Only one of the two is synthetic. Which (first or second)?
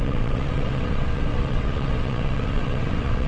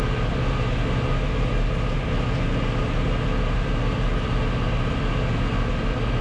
first